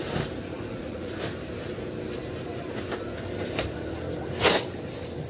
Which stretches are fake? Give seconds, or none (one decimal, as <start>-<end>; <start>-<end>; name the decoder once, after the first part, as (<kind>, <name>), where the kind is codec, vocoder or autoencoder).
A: 0.5-1.2 (vocoder, Vocos)